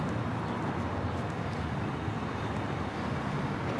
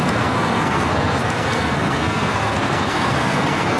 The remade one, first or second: second